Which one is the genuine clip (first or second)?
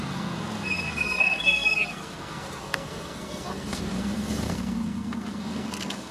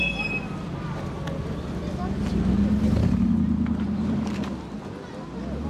second